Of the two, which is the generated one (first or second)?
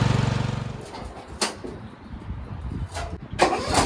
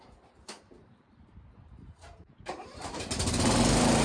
second